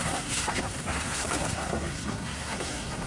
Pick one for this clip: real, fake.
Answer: fake